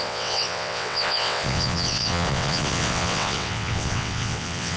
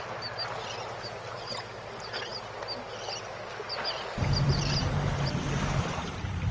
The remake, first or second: first